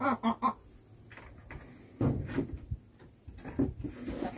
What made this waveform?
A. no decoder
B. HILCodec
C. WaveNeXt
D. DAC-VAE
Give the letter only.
A